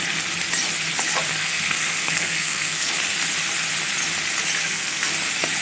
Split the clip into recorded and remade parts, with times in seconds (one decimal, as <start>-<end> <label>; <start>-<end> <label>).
0.0-1.4 recorded; 1.4-2.9 remade; 2.9-4.6 recorded; 4.6-5.1 remade; 5.1-5.6 recorded